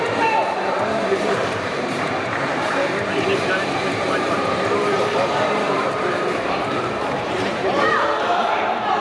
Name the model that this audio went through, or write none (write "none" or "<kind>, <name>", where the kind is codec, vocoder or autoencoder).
vocoder, BigVGAN v2